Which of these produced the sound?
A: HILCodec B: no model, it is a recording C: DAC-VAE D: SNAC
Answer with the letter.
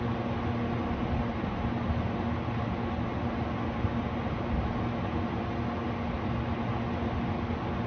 B